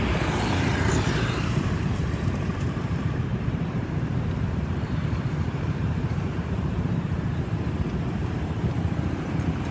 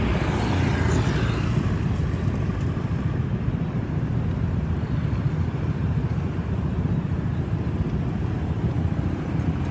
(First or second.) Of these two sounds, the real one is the second